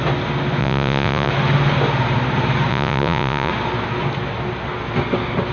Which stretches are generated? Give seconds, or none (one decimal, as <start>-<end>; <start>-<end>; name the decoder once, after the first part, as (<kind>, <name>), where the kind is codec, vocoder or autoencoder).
0.6-1.3 (vocoder, Vocos); 2.7-3.5